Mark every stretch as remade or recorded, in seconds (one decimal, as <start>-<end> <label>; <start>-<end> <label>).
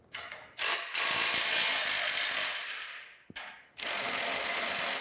0.0-5.0 recorded